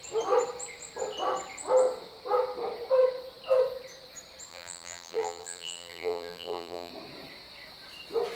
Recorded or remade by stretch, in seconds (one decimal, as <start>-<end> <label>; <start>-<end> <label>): 0.0-4.5 recorded; 4.5-6.9 remade; 6.9-8.4 recorded